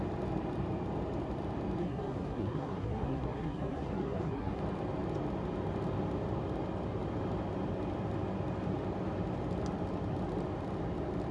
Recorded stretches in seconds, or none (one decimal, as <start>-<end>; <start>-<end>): 0.0-1.8; 4.6-11.3